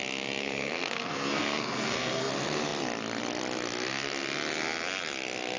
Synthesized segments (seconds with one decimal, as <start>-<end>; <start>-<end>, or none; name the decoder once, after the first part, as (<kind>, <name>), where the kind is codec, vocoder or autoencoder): 0.4-2.3 (codec, SNAC)